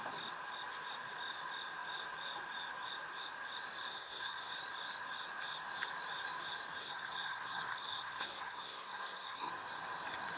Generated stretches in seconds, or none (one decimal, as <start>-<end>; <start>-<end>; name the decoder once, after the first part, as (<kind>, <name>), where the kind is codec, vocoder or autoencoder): 3.9-4.5 (codec, SNAC); 6.8-9.5